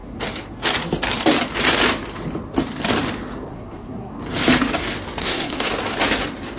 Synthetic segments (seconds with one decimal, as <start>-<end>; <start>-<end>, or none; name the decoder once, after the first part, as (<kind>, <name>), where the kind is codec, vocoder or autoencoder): 3.5-4.1 (codec, SNAC); 5.2-5.7